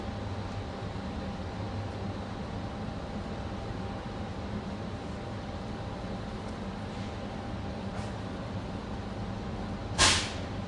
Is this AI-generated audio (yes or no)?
yes